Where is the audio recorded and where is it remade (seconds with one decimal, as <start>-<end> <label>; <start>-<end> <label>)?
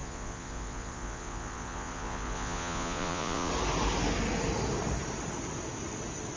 0.0-3.5 remade; 3.5-6.4 recorded